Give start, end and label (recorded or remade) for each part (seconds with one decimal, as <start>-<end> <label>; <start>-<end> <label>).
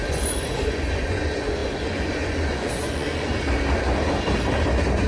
0.0-3.3 remade; 3.3-5.1 recorded